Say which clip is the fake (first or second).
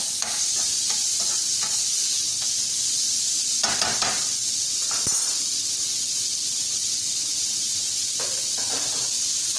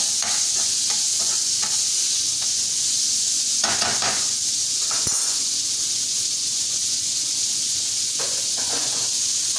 second